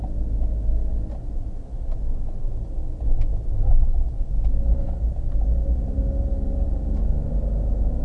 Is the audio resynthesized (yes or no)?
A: no